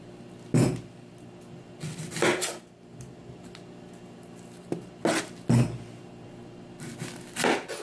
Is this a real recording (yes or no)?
yes